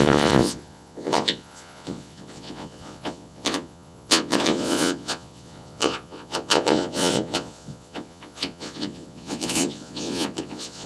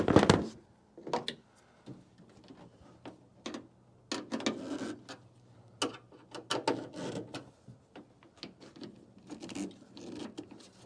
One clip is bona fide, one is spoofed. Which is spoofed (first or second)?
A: first